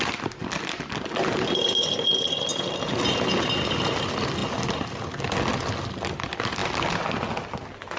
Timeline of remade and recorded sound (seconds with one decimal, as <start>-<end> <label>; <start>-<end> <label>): 0.0-8.0 recorded